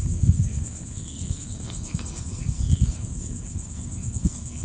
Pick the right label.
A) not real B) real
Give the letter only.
A